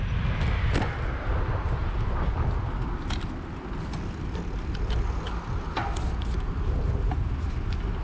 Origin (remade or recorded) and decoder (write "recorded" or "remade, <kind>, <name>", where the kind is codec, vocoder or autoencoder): recorded